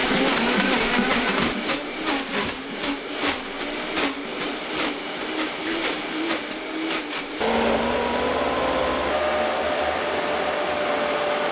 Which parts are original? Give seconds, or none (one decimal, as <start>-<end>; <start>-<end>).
0.0-4.3; 6.4-11.5